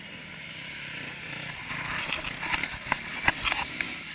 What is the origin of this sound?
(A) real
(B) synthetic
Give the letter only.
A